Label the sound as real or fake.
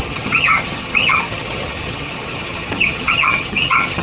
fake